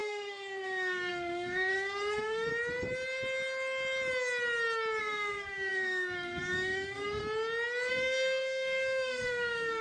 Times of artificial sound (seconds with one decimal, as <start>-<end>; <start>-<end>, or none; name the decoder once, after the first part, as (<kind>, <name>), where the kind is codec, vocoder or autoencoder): 0.0-2.5 (codec, SNAC); 5.0-7.2; 7.9-9.8